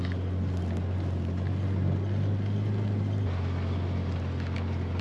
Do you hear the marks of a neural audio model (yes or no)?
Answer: no